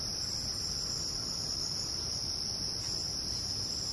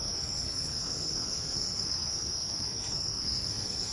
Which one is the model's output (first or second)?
second